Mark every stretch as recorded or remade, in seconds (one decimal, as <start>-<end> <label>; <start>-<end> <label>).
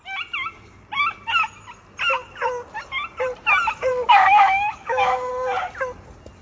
0.0-3.9 recorded; 3.9-5.3 remade; 5.3-6.4 recorded